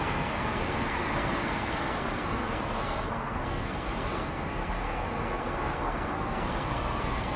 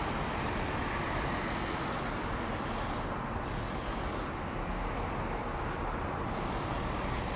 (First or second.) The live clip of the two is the second